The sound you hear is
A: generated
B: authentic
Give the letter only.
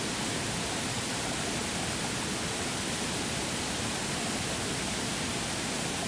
B